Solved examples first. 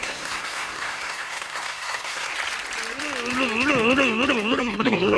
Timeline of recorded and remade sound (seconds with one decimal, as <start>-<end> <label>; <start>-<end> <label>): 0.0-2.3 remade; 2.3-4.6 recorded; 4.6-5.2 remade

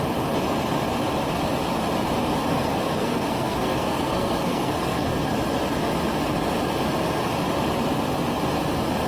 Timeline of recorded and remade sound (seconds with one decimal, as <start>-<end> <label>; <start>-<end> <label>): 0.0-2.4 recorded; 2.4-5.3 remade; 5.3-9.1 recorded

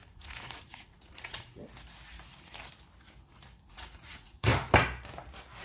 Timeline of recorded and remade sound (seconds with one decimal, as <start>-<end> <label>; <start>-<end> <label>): 0.0-1.6 remade; 1.6-3.7 recorded; 3.7-4.5 remade; 4.5-5.6 recorded

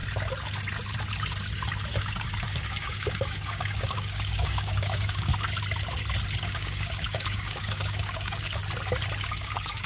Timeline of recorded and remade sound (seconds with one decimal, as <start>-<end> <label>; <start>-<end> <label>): 0.0-1.9 recorded; 1.9-5.3 remade; 5.3-6.4 recorded; 6.4-8.6 remade; 8.6-9.2 recorded; 9.2-9.9 remade

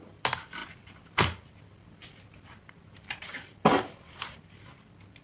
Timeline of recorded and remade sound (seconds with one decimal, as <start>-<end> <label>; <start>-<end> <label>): 0.0-5.2 recorded

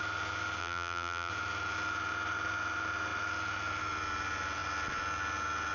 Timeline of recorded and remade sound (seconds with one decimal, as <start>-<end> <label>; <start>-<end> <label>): 0.0-0.6 recorded; 0.6-1.3 remade; 1.3-5.7 recorded

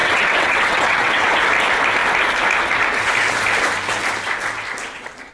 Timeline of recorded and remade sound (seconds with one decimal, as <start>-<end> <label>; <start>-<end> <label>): 0.0-1.3 remade; 1.3-5.3 recorded

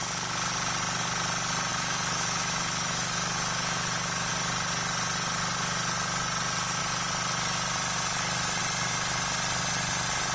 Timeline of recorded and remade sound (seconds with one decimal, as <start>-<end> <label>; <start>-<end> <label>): 0.0-1.7 recorded; 1.7-4.3 remade; 4.3-10.3 recorded